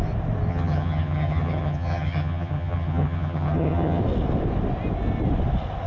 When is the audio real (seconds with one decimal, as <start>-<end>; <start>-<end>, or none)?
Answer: 0.0-0.5; 4.0-5.9